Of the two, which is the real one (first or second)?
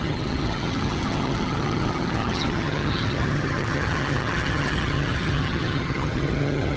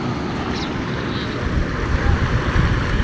second